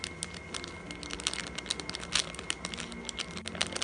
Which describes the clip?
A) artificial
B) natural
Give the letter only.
B